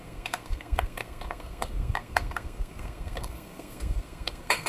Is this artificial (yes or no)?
yes